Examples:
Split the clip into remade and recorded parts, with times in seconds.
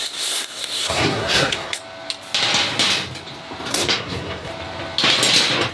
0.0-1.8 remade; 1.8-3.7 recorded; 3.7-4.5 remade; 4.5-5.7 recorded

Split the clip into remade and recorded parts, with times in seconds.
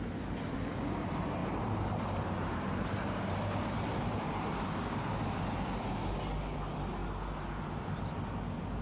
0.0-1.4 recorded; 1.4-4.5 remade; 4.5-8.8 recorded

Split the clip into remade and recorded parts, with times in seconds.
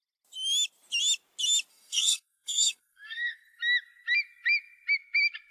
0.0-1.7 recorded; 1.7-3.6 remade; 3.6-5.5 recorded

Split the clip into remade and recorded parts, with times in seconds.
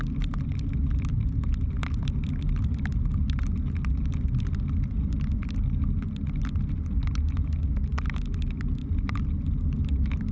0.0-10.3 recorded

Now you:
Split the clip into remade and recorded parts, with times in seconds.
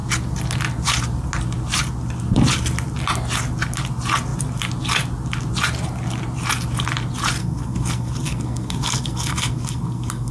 0.0-7.4 recorded; 7.4-10.3 remade